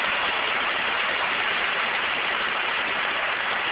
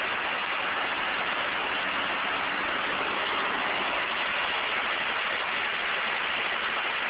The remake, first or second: first